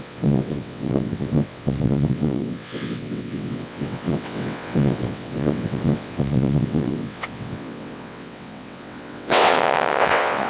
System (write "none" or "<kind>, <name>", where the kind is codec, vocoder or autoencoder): vocoder, WaveNeXt